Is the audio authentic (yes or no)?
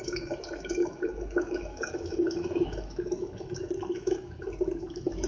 no